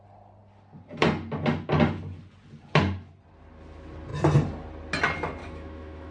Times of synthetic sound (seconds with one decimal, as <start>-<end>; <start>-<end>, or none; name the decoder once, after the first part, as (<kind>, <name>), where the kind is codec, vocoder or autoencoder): 5.4-6.1 (autoencoder, DAC-VAE)